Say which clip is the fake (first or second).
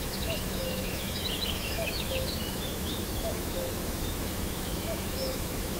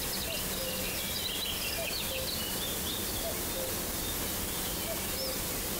first